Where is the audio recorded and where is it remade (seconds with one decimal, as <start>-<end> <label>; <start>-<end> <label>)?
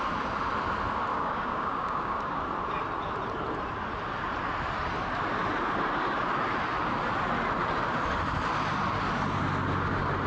0.0-1.1 recorded; 1.1-2.4 remade; 2.4-10.3 recorded